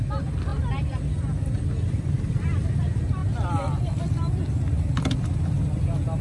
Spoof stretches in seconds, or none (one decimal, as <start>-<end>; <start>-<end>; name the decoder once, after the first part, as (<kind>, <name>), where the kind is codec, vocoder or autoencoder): none